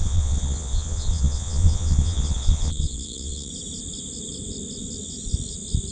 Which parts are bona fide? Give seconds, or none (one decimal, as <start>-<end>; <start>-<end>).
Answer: 3.5-5.9